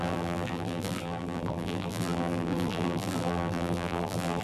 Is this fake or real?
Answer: fake